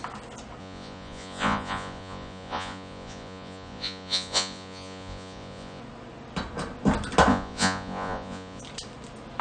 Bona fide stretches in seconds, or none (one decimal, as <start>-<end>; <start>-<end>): 0.0-0.6; 5.8-7.3; 8.6-9.4